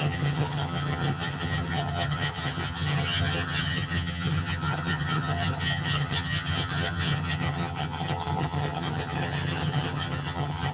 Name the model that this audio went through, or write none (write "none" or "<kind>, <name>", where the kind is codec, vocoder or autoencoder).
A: vocoder, HiFi-GAN